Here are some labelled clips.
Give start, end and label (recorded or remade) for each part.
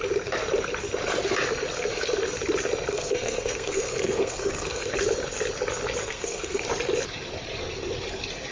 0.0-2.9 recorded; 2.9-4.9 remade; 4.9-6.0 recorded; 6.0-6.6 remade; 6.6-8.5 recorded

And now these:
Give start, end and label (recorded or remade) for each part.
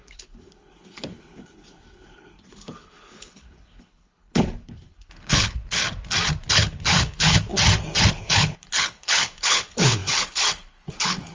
0.0-5.8 remade; 5.8-6.5 recorded; 6.5-7.5 remade; 7.5-8.1 recorded; 8.1-11.3 remade